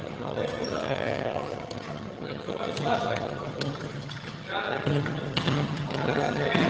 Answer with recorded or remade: remade